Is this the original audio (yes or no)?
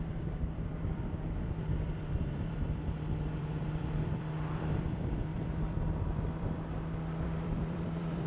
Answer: no